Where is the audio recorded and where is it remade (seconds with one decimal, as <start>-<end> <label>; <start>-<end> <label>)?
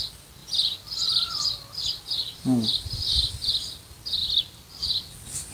0.0-0.4 recorded; 0.4-3.3 remade; 3.3-4.2 recorded; 4.2-5.0 remade; 5.0-5.5 recorded